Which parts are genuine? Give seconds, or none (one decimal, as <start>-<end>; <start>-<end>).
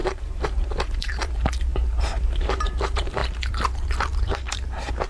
none